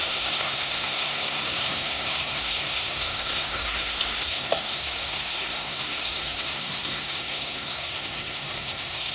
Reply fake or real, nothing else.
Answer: fake